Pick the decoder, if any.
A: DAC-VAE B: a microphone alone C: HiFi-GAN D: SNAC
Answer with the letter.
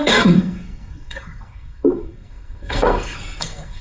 D